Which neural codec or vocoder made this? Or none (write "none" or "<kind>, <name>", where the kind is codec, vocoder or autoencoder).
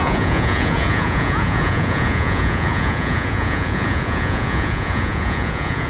vocoder, Vocos